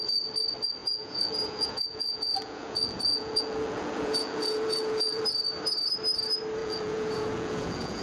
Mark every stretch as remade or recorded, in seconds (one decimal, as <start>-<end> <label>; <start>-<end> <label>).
0.0-0.8 recorded; 0.8-5.2 remade; 5.2-6.6 recorded; 6.6-8.0 remade